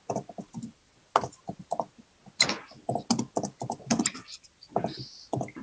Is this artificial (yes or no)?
no